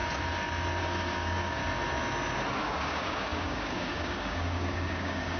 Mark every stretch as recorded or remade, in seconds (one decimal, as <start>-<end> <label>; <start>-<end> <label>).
0.0-0.8 recorded; 0.8-1.6 remade; 1.6-2.6 recorded; 2.6-5.4 remade